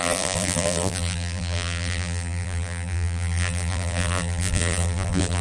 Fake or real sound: fake